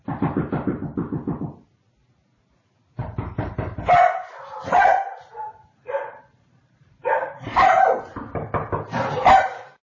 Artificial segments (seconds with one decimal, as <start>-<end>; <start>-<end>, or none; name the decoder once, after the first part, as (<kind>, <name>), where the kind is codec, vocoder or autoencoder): 0.0-1.9 (vocoder, BigVGAN v2); 3.0-8.1